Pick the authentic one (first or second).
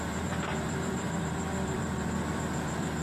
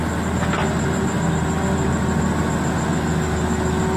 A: second